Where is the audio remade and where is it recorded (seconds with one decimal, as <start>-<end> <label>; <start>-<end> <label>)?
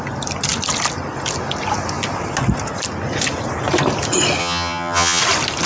0.0-4.4 recorded; 4.4-5.2 remade; 5.2-5.7 recorded